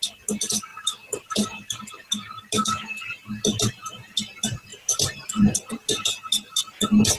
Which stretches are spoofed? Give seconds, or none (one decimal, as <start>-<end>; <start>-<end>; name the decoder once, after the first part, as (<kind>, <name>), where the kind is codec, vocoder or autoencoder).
0.7-1.8 (vocoder, BigVGAN v2); 4.7-6.6

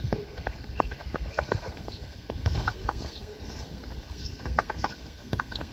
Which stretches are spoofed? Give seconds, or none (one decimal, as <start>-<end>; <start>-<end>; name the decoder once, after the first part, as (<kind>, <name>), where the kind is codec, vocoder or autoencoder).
0.0-5.7 (codec, SNAC)

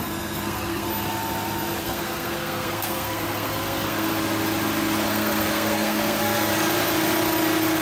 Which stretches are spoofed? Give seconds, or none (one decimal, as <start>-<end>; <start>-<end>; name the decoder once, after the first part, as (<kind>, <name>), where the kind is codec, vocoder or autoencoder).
0.0-0.9 (codec, SNAC); 1.8-4.1; 5.1-6.5

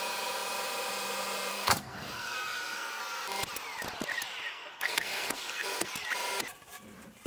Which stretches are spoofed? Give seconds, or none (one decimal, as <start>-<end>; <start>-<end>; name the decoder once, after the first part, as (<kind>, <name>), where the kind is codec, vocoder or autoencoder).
1.5-3.0 (codec, SNAC); 4.5-5.9

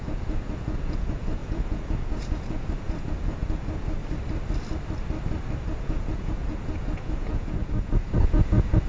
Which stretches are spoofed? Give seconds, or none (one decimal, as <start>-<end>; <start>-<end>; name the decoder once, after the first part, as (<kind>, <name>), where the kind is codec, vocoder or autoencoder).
0.0-4.0 (vocoder, Vocos); 5.6-8.9

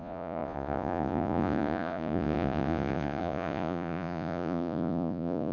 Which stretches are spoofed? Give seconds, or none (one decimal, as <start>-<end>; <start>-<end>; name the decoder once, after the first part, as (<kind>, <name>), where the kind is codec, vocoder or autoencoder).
0.0-5.5 (vocoder, Vocos)